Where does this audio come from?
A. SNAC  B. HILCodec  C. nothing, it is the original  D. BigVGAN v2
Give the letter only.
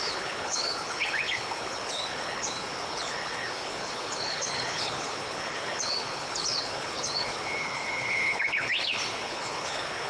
B